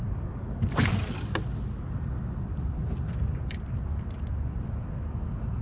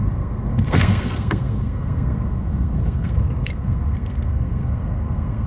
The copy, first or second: second